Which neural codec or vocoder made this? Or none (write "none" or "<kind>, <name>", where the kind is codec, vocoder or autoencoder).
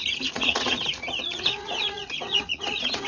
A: vocoder, Vocos